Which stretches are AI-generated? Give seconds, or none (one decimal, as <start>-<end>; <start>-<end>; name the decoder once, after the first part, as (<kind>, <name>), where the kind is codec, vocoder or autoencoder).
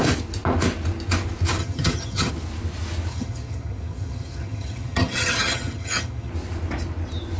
1.6-2.3 (vocoder, HiFi-GAN); 3.1-6.3